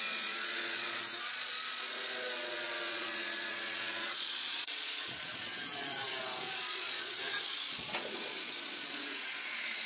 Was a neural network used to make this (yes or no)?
yes